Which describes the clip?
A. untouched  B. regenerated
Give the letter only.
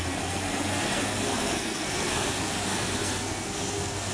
B